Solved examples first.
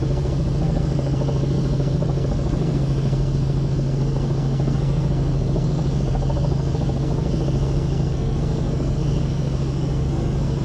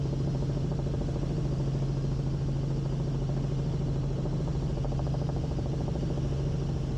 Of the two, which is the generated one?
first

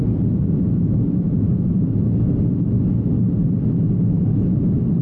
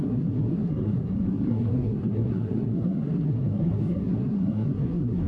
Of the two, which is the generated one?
second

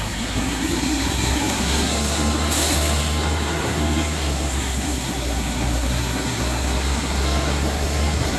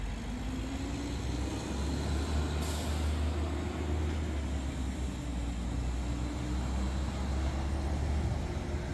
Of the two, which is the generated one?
first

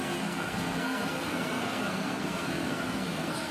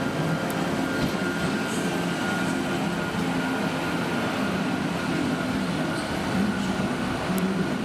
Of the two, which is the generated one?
first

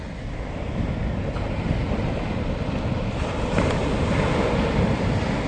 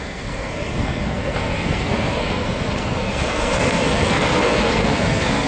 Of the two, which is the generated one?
second